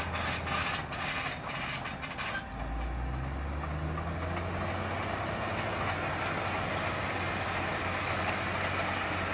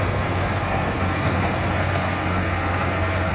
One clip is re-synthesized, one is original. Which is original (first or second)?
first